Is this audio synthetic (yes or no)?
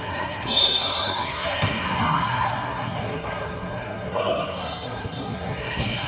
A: yes